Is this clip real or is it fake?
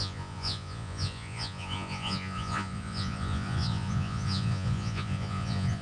fake